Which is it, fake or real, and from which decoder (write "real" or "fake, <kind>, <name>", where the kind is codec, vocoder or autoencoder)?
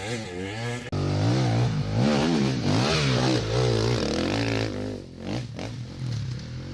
real